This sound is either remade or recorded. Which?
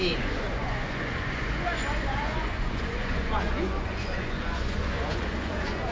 remade